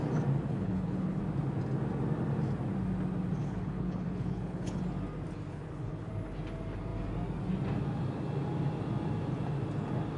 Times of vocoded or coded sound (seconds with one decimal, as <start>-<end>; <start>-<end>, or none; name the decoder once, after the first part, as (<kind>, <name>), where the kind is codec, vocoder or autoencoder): 0.5-1.2 (codec, HILCodec); 3.4-4.8; 5.5-6.1